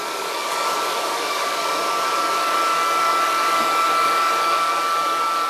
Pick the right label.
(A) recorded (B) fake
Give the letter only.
B